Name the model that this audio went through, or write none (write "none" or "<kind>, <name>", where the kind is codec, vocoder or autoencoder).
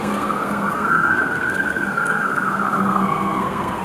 codec, SNAC